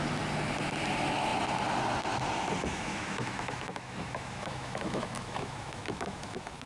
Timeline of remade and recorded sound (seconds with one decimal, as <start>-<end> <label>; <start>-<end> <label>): 0.0-2.7 recorded; 2.7-6.7 remade